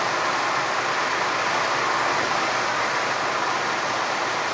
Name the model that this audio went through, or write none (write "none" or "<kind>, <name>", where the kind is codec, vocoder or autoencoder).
none